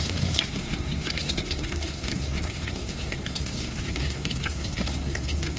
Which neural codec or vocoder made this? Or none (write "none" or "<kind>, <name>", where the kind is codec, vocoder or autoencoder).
codec, SNAC